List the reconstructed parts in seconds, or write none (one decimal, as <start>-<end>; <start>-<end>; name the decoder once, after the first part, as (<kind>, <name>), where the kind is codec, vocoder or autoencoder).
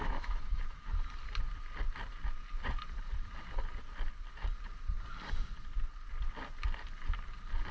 0.0-0.9 (autoencoder, DAC-VAE)